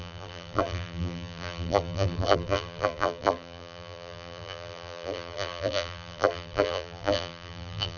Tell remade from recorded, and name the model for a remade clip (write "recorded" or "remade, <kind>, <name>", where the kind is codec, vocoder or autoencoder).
remade, vocoder, BigVGAN v2